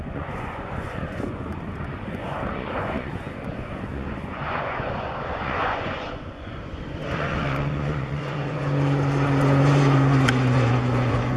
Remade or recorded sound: remade